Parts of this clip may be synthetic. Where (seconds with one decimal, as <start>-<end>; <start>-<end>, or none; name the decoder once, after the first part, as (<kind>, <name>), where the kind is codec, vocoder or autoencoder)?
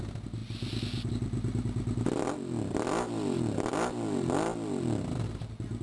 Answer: none